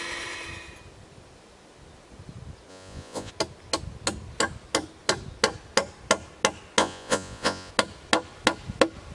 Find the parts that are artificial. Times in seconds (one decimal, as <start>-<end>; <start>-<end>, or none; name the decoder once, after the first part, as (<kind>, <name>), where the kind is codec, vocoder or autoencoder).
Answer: 2.7-3.3 (vocoder, Vocos); 6.8-7.7